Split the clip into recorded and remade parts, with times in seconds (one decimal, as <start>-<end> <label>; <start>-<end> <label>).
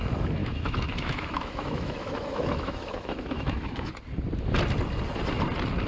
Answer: 0.0-0.4 recorded; 0.4-3.9 remade; 3.9-5.9 recorded